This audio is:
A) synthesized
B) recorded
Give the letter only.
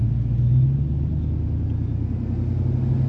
B